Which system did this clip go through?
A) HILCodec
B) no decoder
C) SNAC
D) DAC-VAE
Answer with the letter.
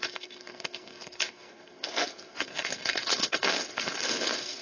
C